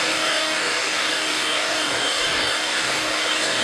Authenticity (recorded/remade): remade